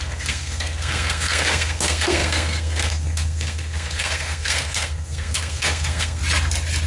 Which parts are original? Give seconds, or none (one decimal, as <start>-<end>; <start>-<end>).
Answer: 6.2-6.9